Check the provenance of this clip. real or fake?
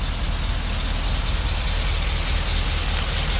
real